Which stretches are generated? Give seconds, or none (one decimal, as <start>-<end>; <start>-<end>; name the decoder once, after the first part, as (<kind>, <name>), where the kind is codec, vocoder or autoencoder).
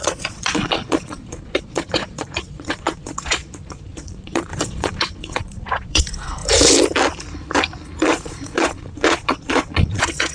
0.0-6.4 (vocoder, Vocos); 8.0-10.3